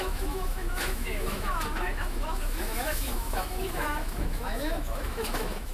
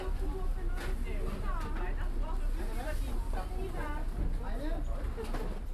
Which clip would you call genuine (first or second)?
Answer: second